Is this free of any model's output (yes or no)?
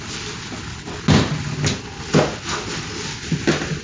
yes